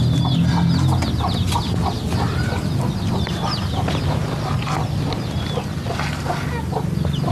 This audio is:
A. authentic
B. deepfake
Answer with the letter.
A